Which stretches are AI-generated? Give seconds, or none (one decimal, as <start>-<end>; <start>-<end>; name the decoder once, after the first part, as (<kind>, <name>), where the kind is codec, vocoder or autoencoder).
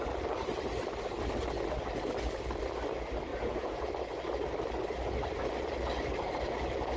3.3-3.9 (vocoder, Vocos)